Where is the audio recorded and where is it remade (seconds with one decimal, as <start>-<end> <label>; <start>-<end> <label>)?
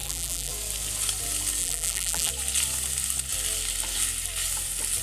0.0-0.5 remade; 0.5-1.6 recorded; 1.6-2.3 remade; 2.3-5.0 recorded